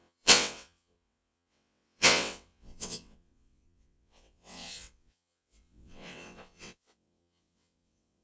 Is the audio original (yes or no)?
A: no